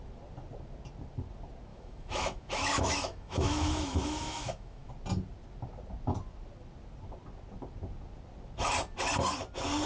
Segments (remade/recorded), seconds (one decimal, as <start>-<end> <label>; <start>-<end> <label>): 0.0-1.7 recorded; 1.7-4.9 remade; 4.9-9.9 recorded